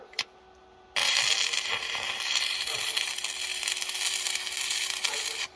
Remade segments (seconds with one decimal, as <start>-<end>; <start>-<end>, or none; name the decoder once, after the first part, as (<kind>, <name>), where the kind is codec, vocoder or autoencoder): none

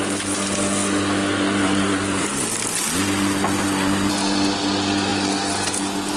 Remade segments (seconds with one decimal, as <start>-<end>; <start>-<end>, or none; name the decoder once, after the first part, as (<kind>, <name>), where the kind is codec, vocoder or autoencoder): none

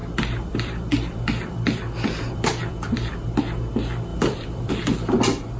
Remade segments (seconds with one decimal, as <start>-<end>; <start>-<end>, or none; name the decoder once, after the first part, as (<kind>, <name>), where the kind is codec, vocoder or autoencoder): 0.0-3.4 (vocoder, BigVGAN v2); 4.1-4.7

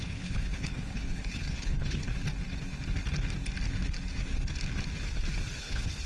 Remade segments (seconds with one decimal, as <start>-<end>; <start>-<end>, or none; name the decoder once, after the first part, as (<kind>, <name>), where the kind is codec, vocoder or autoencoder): 0.0-2.1 (codec, HILCodec); 5.6-6.1

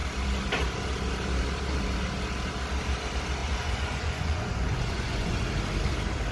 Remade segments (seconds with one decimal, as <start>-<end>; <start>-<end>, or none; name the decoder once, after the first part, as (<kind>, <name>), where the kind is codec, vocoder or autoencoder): 3.4-5.5 (vocoder, Vocos)